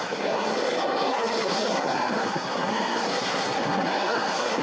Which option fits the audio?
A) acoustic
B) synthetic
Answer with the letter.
B